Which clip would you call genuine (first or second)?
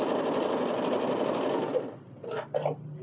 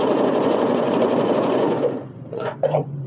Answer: first